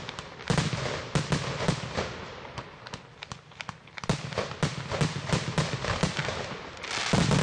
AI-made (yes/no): no